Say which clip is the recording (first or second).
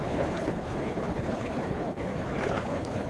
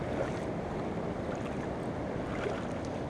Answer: second